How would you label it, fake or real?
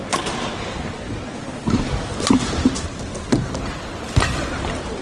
real